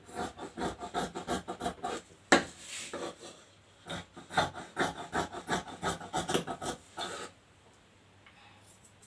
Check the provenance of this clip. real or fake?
real